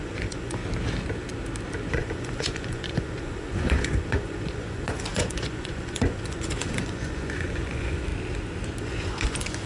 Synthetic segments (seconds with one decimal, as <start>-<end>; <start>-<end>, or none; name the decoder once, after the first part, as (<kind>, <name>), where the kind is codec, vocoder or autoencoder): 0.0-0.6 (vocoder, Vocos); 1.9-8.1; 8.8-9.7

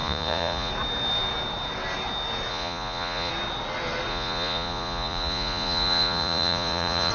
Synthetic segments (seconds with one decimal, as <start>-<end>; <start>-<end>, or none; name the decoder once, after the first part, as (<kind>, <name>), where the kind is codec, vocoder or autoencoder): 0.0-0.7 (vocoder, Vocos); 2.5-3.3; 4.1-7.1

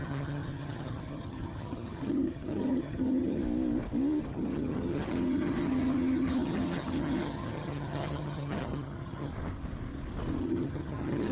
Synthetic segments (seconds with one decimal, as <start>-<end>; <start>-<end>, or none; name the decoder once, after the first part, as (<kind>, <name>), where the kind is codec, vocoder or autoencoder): 0.0-3.4 (vocoder, HiFi-GAN); 4.3-9.3; 10.4-11.3

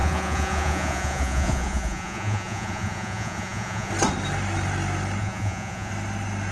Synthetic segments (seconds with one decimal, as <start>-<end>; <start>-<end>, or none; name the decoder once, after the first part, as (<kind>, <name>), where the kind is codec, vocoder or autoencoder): 0.0-3.9 (vocoder, Vocos); 5.2-5.9

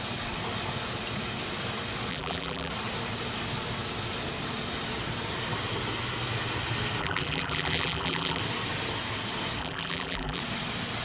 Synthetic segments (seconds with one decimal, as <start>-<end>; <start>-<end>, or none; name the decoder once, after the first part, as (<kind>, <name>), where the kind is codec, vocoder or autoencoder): 2.1-2.7 (vocoder, BigVGAN v2); 7.0-8.4; 9.6-10.4